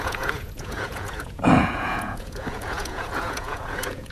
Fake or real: fake